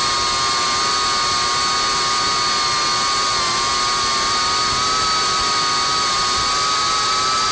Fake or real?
real